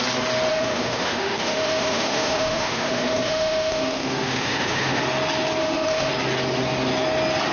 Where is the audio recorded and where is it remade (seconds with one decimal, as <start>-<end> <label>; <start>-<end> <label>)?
0.0-0.5 recorded; 0.5-5.0 remade; 5.0-5.6 recorded; 5.6-6.1 remade; 6.1-7.5 recorded